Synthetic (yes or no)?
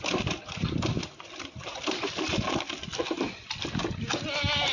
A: no